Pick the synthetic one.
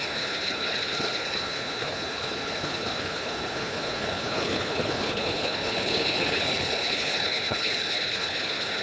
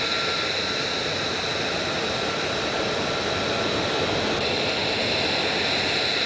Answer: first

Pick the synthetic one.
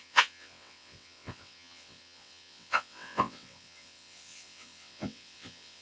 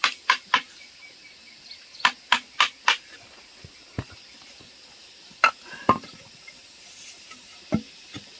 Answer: first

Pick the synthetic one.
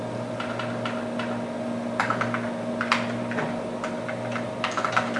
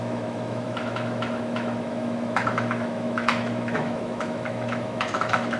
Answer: second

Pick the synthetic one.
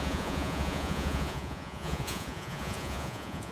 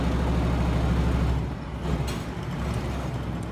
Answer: first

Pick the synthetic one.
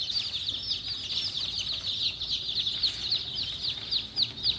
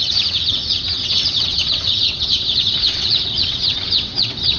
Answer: second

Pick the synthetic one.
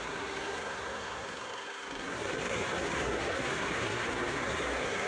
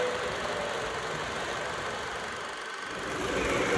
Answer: first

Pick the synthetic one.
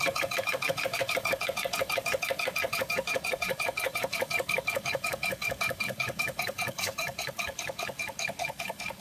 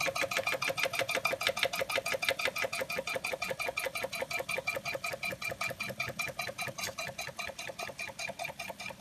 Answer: first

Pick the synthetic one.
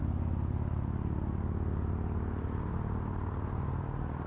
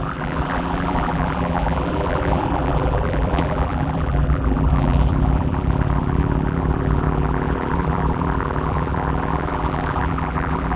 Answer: second